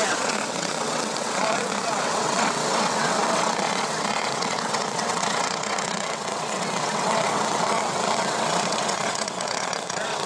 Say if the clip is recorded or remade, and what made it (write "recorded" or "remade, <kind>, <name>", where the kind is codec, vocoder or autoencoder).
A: remade, vocoder, WaveNeXt